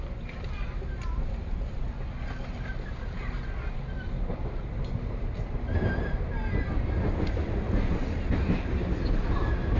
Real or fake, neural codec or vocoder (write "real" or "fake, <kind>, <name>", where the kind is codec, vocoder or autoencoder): real